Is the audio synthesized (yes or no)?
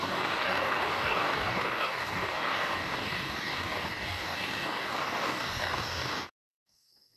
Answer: yes